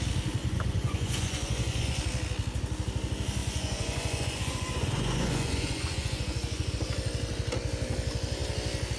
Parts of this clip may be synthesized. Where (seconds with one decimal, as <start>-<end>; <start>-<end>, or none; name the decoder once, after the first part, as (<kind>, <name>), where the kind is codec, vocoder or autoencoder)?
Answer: 0.4-2.0 (vocoder, Vocos); 3.4-6.7